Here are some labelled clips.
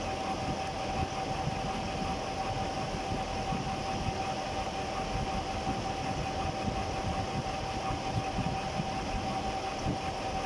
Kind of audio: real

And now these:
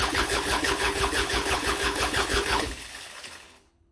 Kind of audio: fake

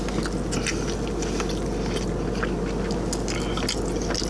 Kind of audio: real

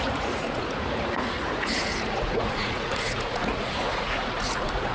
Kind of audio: fake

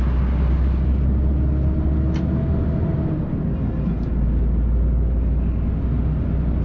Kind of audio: real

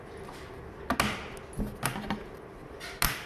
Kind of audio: real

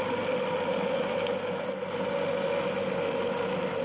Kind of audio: real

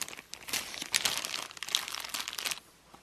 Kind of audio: real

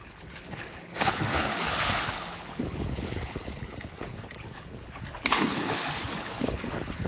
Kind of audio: fake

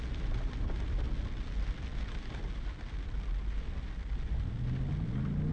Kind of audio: real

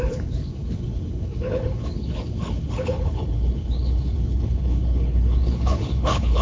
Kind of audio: fake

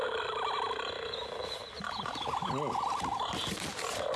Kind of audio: real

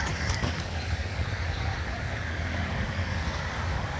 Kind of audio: fake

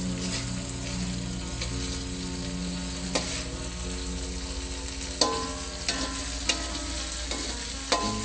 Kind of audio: real